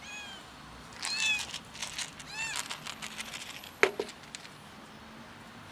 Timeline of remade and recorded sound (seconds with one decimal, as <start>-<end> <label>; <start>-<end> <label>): 0.0-5.7 recorded